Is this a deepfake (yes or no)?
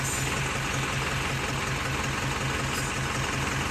no